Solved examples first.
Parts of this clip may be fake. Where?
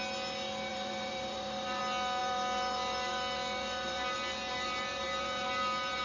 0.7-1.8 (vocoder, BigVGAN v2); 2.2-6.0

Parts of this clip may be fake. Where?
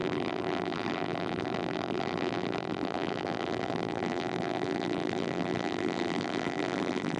0.0-7.2 (vocoder, BigVGAN v2)